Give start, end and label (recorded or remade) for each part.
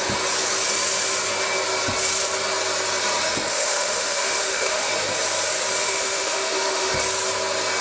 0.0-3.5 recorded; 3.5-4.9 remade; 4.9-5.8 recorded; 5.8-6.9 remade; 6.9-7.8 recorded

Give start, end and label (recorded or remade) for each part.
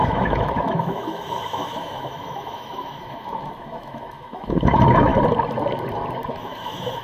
0.0-5.1 remade; 5.1-6.3 recorded; 6.3-7.0 remade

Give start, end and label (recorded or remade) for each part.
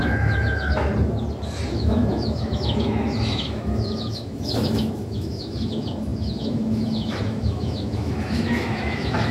0.0-0.9 remade; 0.9-1.7 recorded; 1.7-9.3 remade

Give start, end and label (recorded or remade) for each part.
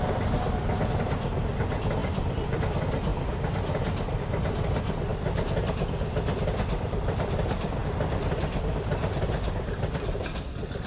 0.0-2.0 recorded; 2.0-2.6 remade; 2.6-5.1 recorded; 5.1-5.7 remade; 5.7-10.9 recorded